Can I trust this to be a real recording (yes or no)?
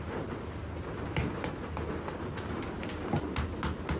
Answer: yes